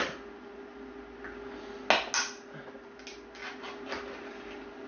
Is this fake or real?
real